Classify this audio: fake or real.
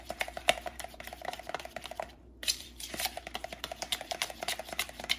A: fake